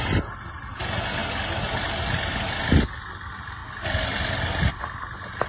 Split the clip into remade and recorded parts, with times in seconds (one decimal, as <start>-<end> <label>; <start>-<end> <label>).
0.0-5.5 recorded